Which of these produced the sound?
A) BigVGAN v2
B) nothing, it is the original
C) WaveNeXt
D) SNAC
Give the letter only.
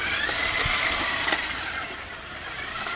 B